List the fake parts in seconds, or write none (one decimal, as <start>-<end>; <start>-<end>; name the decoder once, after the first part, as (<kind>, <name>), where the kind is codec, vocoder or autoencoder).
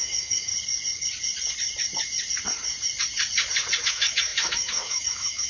0.0-0.5 (autoencoder, DAC-VAE); 3.8-5.5